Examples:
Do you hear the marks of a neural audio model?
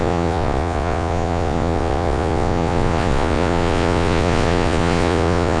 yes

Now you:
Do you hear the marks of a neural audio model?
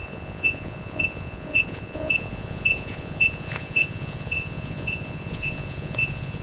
yes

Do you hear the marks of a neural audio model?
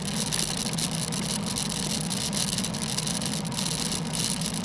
no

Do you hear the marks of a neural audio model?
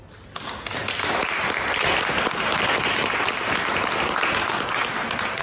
no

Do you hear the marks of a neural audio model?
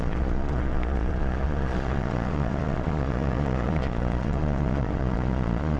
yes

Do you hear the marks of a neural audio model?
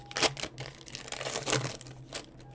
no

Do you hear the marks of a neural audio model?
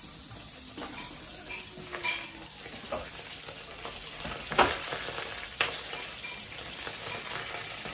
no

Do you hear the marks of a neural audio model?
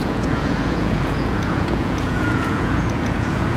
yes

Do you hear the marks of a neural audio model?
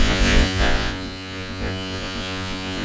yes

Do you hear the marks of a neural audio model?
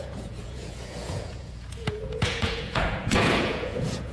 yes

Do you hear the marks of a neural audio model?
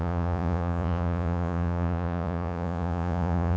yes